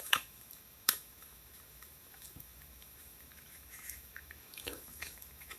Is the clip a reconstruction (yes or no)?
yes